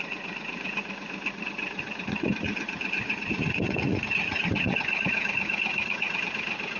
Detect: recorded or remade remade